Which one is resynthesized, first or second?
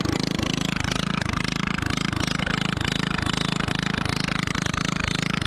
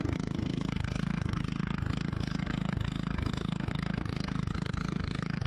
second